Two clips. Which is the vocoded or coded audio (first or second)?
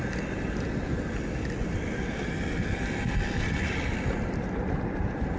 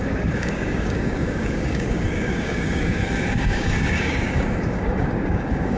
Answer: second